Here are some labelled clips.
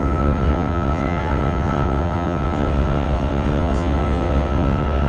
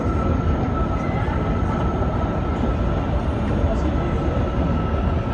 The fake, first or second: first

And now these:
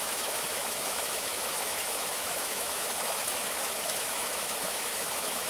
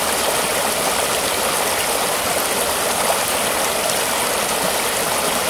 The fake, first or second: first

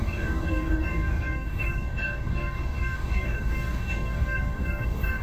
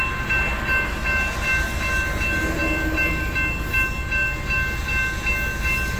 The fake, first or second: first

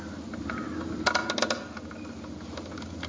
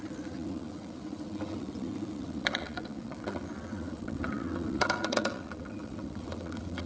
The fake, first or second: second